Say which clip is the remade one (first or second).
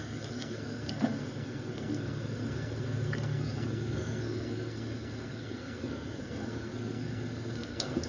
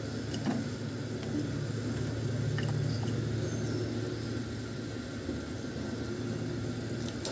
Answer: first